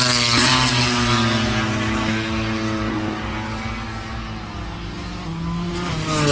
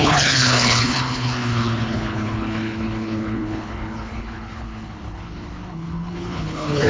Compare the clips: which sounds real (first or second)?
first